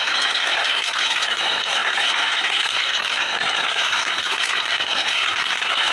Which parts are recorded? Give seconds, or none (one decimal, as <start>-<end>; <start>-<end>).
none

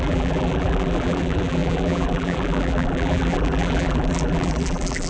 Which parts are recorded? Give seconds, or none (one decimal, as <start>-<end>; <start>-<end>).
none

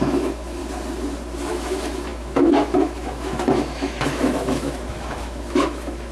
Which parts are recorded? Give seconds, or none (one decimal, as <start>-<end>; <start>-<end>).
0.6-1.5

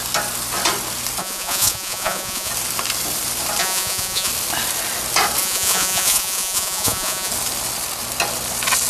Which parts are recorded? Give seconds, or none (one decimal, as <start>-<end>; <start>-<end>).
0.0-1.2; 2.5-3.6; 4.3-5.4; 7.3-8.9

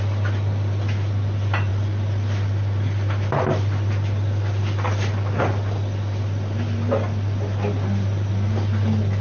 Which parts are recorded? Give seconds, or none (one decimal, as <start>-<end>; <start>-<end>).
0.0-9.2

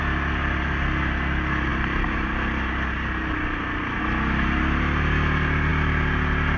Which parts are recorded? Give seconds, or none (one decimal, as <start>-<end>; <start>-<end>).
0.0-6.6

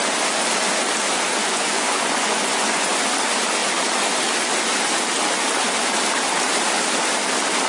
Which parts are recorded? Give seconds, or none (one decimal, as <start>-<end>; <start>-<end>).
0.0-1.4; 3.1-7.7

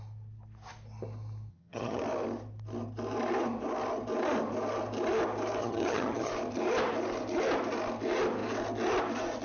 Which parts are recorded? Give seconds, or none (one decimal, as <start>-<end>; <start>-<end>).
0.0-1.5; 2.0-5.6; 6.3-9.4